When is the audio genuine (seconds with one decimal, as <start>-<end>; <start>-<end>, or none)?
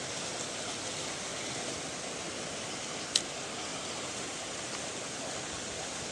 0.0-1.3; 3.2-6.1